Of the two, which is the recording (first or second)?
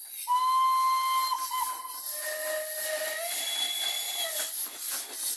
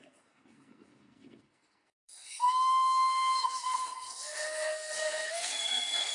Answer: first